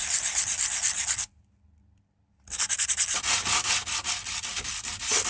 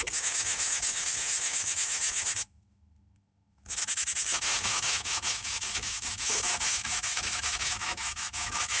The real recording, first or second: first